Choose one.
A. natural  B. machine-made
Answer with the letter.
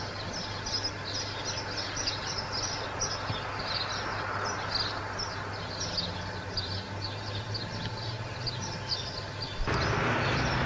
A